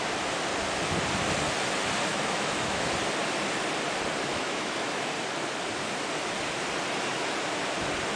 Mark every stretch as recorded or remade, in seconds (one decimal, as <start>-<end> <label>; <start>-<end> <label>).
0.0-2.1 recorded; 2.1-2.9 remade; 2.9-4.3 recorded; 4.3-5.1 remade; 5.1-8.2 recorded